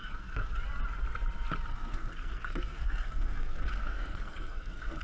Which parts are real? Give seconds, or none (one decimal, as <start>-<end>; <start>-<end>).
0.5-1.7